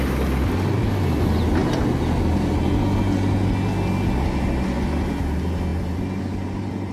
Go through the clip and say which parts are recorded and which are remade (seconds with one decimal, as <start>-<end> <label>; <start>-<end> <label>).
0.0-6.9 recorded